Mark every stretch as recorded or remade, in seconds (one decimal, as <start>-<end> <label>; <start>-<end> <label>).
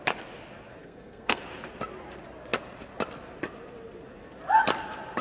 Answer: 0.0-0.8 recorded; 0.8-1.4 remade; 1.4-5.2 recorded